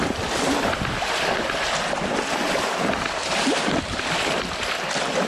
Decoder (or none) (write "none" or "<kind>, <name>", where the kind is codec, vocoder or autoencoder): none